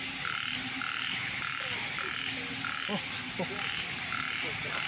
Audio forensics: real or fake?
real